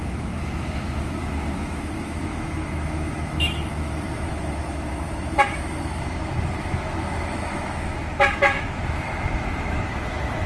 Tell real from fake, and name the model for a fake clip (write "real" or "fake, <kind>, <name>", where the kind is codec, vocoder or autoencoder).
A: fake, autoencoder, DAC-VAE